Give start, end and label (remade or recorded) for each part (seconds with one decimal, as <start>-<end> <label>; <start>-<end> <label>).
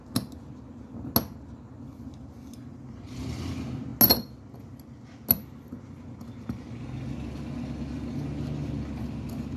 0.0-9.6 recorded